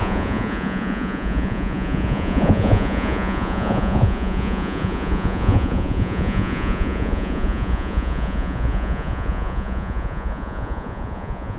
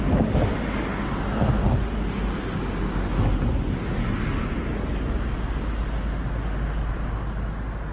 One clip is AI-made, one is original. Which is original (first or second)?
second